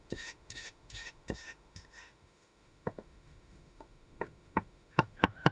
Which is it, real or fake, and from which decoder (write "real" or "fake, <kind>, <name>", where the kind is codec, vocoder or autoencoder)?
fake, autoencoder, DAC-VAE